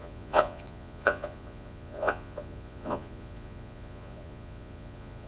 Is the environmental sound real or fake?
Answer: fake